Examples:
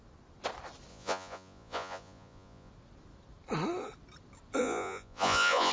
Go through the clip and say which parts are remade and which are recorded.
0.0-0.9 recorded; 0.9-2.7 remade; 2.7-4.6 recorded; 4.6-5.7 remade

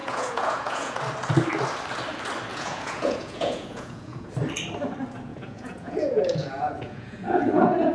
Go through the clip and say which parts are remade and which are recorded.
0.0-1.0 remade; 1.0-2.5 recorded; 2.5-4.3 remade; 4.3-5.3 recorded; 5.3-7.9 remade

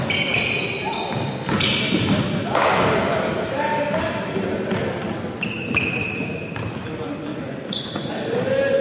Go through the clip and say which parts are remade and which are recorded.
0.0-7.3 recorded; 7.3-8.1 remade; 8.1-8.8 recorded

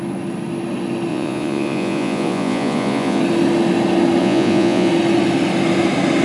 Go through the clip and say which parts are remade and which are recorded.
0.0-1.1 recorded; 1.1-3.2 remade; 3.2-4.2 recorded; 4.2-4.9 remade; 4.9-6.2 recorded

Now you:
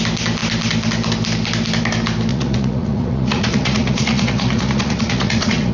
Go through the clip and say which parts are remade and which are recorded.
0.0-2.3 recorded; 2.3-5.7 remade

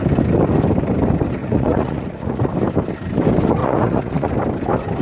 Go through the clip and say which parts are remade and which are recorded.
0.0-1.4 recorded; 1.4-2.5 remade; 2.5-3.6 recorded; 3.6-4.3 remade; 4.3-5.0 recorded